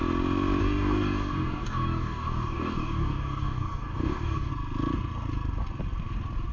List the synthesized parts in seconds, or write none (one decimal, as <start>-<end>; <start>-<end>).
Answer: 0.6-4.5